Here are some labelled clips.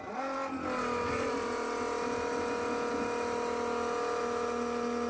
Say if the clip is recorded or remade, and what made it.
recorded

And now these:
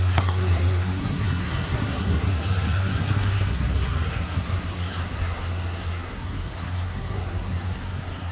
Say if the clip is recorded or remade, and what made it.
remade, codec, SNAC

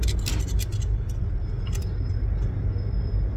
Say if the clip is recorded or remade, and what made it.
recorded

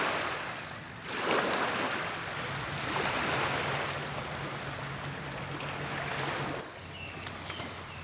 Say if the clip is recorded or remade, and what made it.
recorded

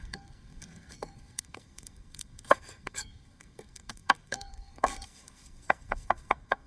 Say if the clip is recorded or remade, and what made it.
remade, codec, SNAC